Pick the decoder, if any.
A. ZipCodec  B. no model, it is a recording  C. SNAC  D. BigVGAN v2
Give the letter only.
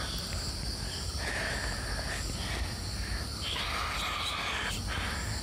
B